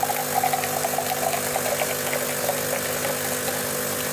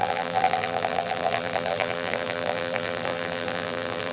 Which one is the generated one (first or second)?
second